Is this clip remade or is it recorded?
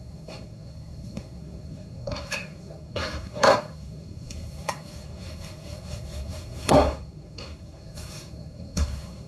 remade